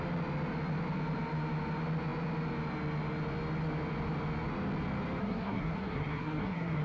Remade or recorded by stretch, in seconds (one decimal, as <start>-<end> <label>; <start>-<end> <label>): 0.0-5.2 recorded; 5.2-6.8 remade